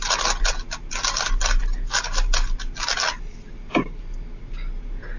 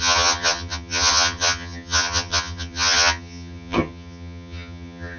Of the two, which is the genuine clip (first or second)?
first